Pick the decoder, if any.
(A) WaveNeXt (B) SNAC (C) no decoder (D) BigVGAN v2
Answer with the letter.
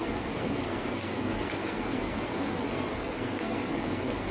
B